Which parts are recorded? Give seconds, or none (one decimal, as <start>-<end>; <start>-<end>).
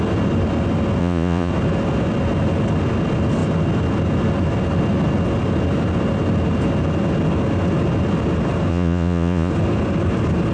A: 0.0-1.0; 1.5-8.7; 9.5-10.5